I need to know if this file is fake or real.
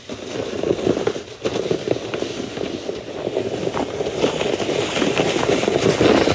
real